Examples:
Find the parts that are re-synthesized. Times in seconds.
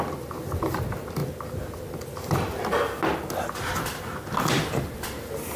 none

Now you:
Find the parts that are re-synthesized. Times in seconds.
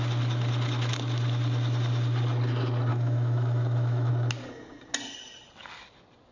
2.9-4.1 (autoencoder, DAC-VAE)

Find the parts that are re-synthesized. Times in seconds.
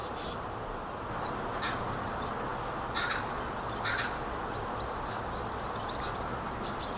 none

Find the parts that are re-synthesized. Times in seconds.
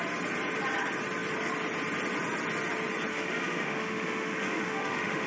3.1-5.3 (autoencoder, DAC-VAE)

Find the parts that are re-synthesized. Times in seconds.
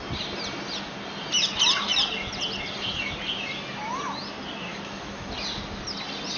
4.7-5.3 (autoencoder, DAC-VAE)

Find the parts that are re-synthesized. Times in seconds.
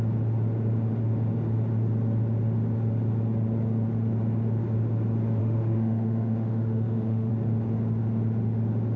5.4-7.3 (autoencoder, DAC-VAE)